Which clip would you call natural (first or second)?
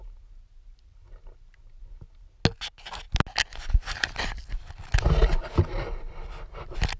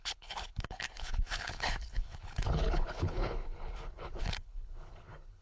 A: first